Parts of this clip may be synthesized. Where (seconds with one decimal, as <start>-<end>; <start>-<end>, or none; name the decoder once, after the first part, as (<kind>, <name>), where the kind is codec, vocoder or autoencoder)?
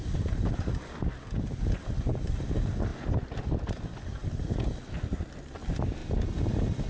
none